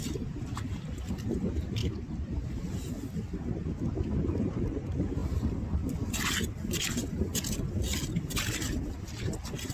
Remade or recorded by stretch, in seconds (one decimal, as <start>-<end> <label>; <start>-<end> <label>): 0.0-9.7 recorded